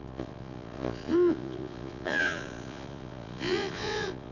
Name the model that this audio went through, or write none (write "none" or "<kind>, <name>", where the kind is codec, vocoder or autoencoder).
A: vocoder, Vocos